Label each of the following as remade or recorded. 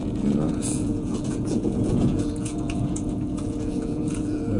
remade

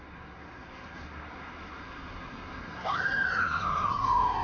remade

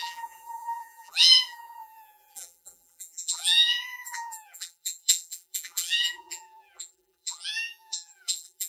remade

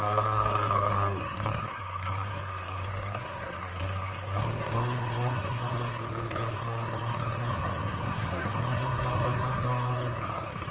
remade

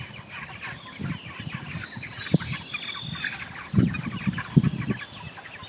recorded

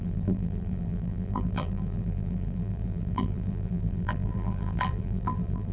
remade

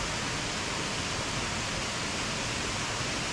recorded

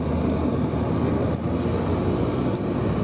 recorded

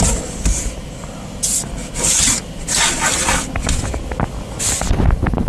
recorded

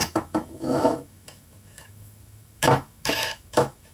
remade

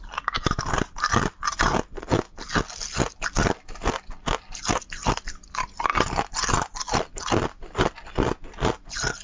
recorded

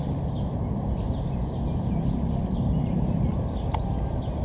recorded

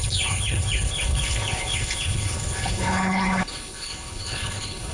remade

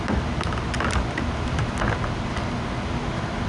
recorded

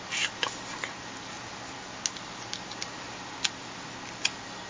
recorded